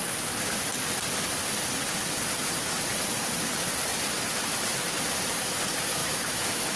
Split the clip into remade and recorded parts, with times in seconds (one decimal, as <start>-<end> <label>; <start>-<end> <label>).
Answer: 0.0-6.0 recorded; 6.0-6.8 remade